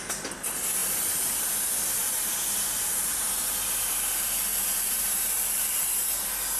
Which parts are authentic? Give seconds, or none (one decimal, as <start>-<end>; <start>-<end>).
0.0-0.8; 1.5-2.0; 3.2-4.5; 5.9-6.6